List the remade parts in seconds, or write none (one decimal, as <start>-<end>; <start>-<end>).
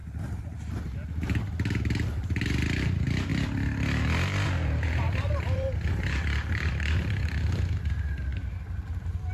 3.3-6.7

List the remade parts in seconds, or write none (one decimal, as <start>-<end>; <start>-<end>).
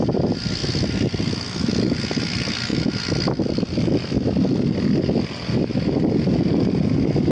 none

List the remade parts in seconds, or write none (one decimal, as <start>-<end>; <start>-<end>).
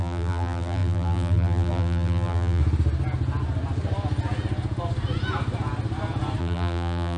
0.0-2.6; 6.4-7.2